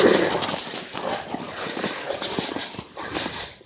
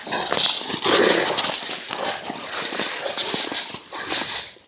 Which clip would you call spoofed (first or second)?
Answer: first